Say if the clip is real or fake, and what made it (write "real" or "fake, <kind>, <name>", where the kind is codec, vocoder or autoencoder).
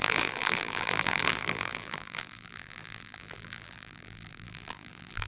fake, vocoder, BigVGAN v2